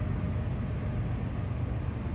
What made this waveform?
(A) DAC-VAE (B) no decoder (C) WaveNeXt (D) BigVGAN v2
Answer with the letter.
B